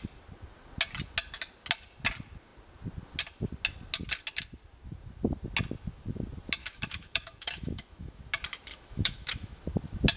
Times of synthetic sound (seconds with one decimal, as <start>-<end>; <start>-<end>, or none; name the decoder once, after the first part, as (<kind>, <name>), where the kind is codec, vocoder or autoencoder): 6.6-8.2 (autoencoder, DAC-VAE); 8.7-9.6